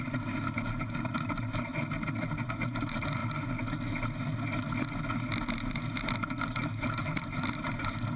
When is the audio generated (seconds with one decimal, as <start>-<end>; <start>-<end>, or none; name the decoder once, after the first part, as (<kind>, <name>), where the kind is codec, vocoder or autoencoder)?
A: 0.0-3.2 (vocoder, BigVGAN v2); 6.3-8.2